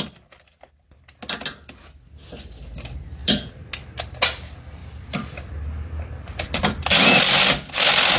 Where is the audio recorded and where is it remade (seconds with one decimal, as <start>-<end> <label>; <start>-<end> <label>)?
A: 0.0-4.8 recorded; 4.8-5.5 remade; 5.5-8.2 recorded